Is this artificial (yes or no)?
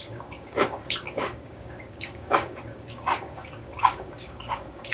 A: yes